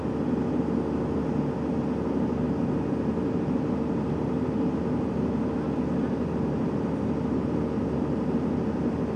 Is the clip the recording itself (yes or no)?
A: yes